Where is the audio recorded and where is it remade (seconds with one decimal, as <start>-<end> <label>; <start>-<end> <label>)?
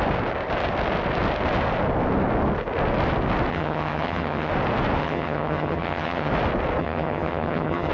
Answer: 0.0-3.5 recorded; 3.5-4.5 remade; 4.5-5.0 recorded; 5.0-6.3 remade; 6.3-6.8 recorded; 6.8-7.9 remade